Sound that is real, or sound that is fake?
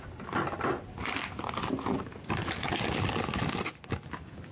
real